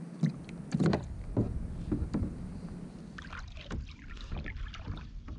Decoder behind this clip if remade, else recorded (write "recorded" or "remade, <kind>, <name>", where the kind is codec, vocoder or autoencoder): recorded